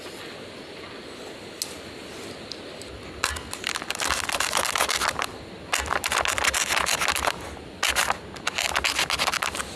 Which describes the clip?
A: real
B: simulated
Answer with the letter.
A